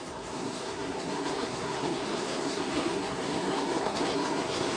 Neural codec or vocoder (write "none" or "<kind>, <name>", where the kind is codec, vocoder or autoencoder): codec, SNAC